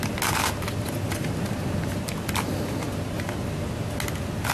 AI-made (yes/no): no